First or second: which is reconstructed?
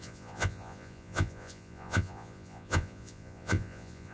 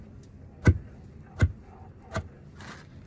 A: first